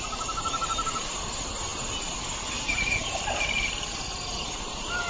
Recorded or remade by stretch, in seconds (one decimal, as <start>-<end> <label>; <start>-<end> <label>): 0.0-5.1 recorded